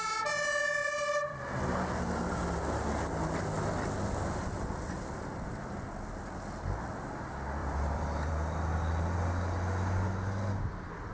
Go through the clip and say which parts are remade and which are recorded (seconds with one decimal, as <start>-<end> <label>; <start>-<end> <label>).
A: 0.0-0.8 recorded; 0.8-1.4 remade; 1.4-7.6 recorded; 7.6-8.3 remade; 8.3-11.1 recorded